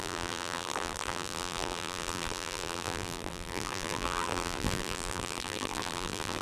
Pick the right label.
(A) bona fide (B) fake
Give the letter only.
B